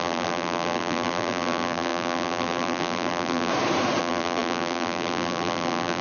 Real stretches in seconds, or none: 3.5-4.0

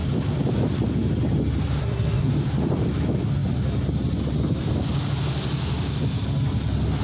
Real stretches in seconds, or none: 0.0-1.8; 2.3-7.0